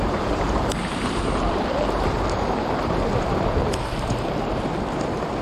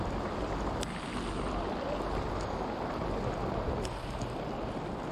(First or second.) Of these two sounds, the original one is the second